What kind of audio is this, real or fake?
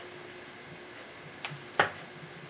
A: real